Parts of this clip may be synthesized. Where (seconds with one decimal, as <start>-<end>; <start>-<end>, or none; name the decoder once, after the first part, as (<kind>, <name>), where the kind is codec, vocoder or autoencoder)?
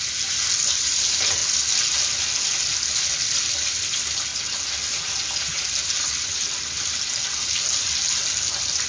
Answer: none